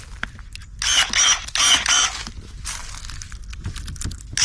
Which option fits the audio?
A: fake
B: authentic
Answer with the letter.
B